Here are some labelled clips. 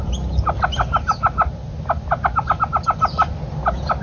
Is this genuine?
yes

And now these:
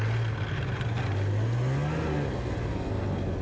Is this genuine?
yes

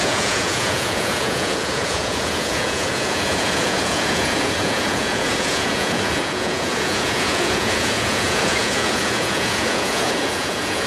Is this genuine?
no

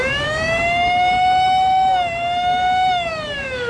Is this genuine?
no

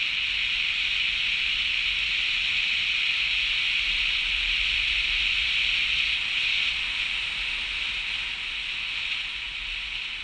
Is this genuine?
yes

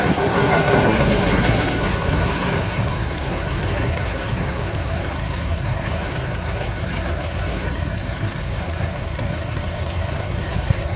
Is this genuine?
no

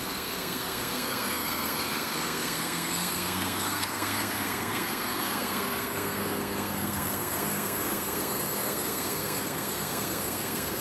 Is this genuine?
no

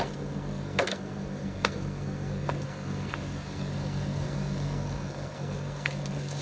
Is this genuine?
no